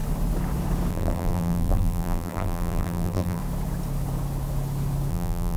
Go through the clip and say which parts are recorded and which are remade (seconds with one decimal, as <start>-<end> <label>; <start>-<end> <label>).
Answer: 0.0-0.9 recorded; 0.9-3.4 remade; 3.4-5.1 recorded; 5.1-5.6 remade